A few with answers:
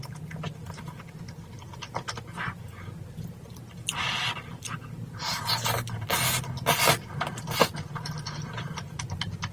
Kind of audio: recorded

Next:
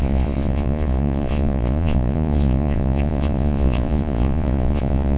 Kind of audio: remade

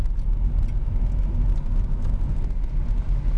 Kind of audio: recorded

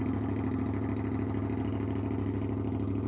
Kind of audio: recorded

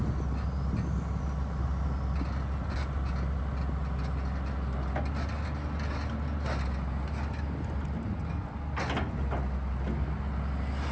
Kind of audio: recorded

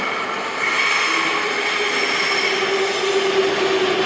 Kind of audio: recorded